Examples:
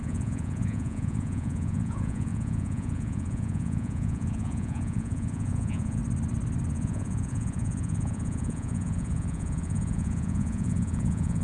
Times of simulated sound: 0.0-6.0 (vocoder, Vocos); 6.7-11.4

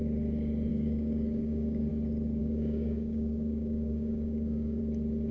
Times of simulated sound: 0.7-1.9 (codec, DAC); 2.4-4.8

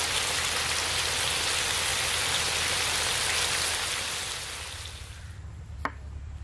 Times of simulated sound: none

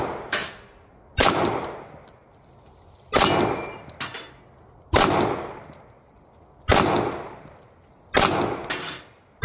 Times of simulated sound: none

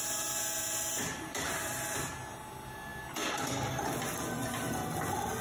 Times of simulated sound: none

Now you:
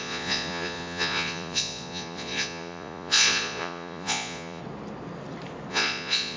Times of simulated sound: 0.0-4.6 (vocoder, Vocos); 5.7-6.4

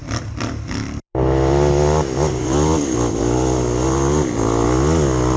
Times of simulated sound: 0.0-3.2 (vocoder, BigVGAN v2)